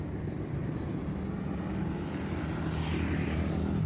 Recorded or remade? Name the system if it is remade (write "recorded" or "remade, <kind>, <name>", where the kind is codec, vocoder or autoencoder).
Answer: recorded